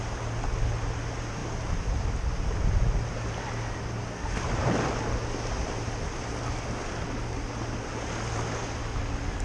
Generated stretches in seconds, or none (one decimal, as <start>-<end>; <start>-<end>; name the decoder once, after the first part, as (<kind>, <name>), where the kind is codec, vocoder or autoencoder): none